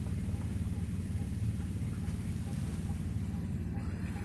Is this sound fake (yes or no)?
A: no